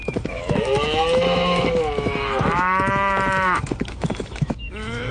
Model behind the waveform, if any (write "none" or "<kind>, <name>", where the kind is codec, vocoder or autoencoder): autoencoder, DAC-VAE